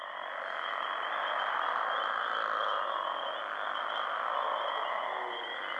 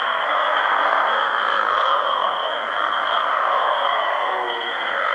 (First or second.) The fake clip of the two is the second